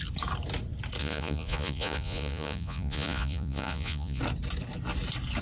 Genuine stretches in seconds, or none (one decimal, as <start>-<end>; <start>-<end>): 0.0-1.0; 4.2-5.4